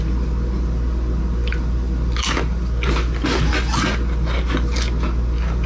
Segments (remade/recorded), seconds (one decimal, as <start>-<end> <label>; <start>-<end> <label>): 0.0-5.7 recorded